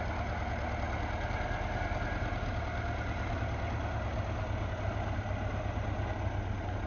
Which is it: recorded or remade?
recorded